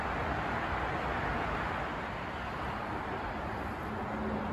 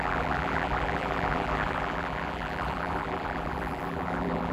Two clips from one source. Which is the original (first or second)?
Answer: first